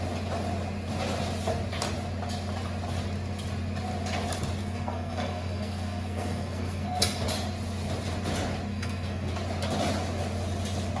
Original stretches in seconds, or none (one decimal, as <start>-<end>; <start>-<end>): 0.0-4.6; 7.0-8.7; 9.3-11.0